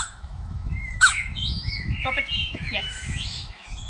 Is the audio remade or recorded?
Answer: remade